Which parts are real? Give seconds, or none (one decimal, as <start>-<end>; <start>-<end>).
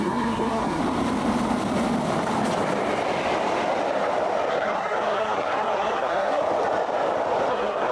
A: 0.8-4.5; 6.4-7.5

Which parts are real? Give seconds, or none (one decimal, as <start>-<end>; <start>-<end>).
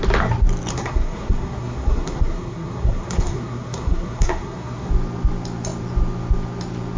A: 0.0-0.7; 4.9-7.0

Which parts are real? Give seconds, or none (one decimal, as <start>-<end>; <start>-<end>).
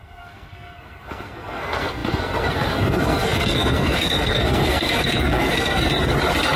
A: 5.9-6.6